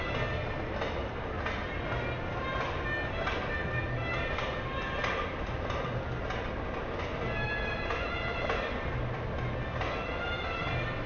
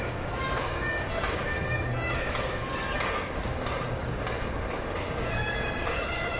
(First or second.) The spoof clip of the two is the second